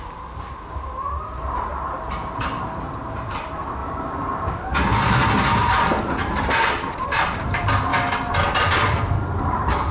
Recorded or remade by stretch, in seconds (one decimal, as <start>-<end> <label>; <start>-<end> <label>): 0.0-3.8 remade; 3.8-5.0 recorded; 5.0-7.9 remade; 7.9-9.4 recorded; 9.4-9.9 remade